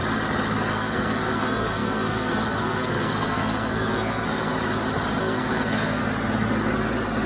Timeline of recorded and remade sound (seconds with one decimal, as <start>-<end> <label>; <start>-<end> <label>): 0.0-0.7 recorded; 0.7-4.5 remade; 4.5-5.2 recorded; 5.2-6.0 remade; 6.0-7.3 recorded

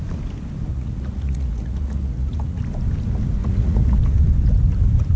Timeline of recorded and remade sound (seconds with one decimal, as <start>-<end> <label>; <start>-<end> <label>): 0.0-0.7 recorded; 0.7-2.6 remade; 2.6-3.4 recorded; 3.4-4.0 remade; 4.0-5.2 recorded

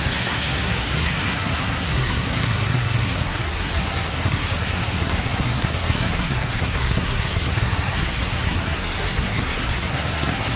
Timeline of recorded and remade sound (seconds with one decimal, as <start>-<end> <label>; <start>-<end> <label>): 0.0-10.6 remade

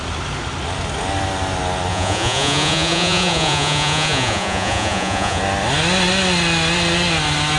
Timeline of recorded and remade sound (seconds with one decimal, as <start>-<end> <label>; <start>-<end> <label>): 0.0-1.9 recorded; 1.9-5.4 remade; 5.4-7.6 recorded

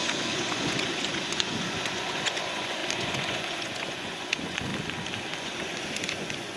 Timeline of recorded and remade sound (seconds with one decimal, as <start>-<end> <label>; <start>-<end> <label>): 0.0-4.7 remade; 4.7-5.4 recorded; 5.4-6.6 remade

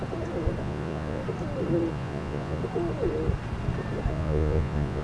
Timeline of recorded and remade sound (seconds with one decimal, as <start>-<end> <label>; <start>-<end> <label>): 0.0-0.6 recorded; 0.6-1.2 remade; 1.2-1.9 recorded; 1.9-2.6 remade; 2.6-4.1 recorded; 4.1-5.0 remade